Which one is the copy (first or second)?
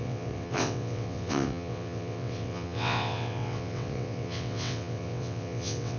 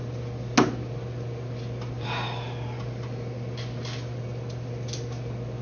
first